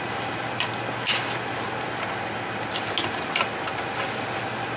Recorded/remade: recorded